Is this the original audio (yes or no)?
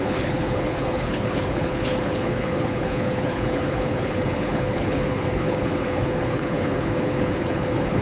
no